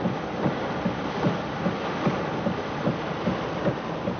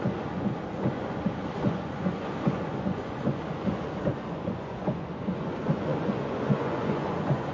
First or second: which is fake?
second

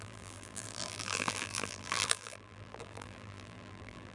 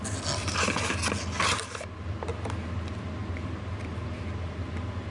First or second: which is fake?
first